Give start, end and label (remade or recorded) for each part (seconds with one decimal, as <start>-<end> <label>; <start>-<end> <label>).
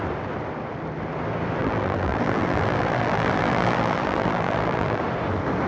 0.0-1.6 recorded; 1.6-5.0 remade; 5.0-5.7 recorded